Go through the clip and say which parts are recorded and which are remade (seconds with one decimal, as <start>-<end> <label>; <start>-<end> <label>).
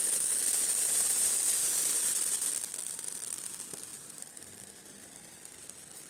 0.0-6.1 recorded